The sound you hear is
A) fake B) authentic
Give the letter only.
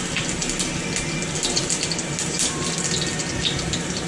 B